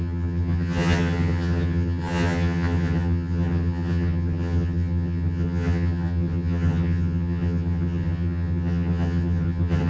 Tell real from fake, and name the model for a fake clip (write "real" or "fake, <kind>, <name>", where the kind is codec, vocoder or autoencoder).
fake, vocoder, HiFi-GAN